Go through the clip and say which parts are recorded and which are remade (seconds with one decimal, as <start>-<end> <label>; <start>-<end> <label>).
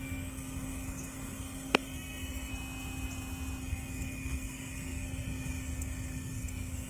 0.0-2.5 remade; 2.5-3.6 recorded; 3.6-6.9 remade